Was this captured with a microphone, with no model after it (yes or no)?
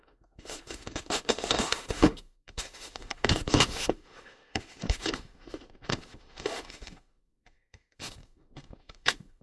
no